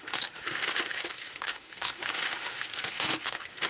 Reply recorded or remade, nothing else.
remade